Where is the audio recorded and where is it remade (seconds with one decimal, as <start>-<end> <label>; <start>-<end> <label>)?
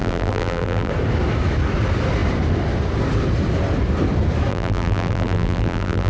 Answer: 0.0-0.9 remade; 0.9-4.5 recorded; 4.5-6.1 remade